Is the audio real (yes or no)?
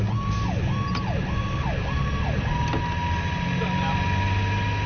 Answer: yes